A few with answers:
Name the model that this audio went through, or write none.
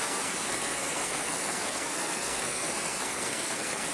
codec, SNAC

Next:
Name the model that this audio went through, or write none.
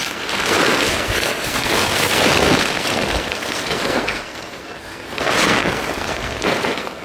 codec, SNAC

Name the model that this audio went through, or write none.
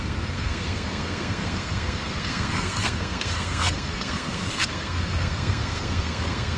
codec, SNAC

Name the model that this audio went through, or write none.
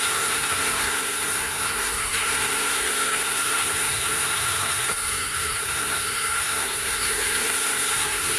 codec, SNAC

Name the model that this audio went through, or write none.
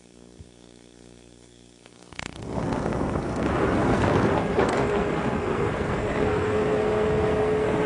codec, SNAC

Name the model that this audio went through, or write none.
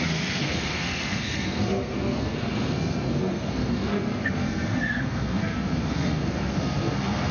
codec, SNAC